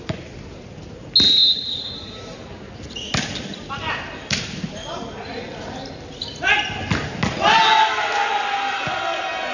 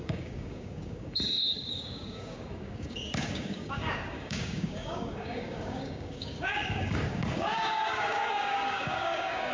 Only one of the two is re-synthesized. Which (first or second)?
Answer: second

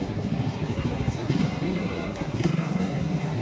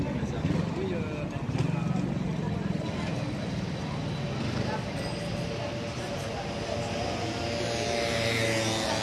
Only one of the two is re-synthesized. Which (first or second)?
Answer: first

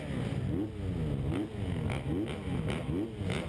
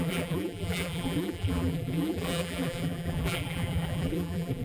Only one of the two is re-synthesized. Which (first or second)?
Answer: second